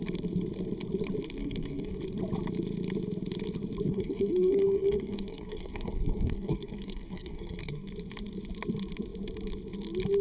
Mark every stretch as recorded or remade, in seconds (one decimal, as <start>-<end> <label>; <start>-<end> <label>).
0.0-1.4 recorded; 1.4-2.0 remade; 2.0-3.9 recorded; 3.9-7.9 remade; 7.9-10.2 recorded